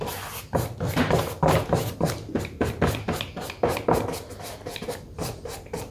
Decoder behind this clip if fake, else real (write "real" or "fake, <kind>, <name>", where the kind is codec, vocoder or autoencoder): real